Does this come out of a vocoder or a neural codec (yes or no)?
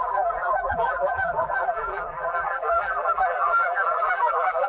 yes